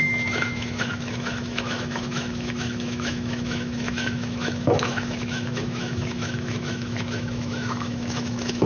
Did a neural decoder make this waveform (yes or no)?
yes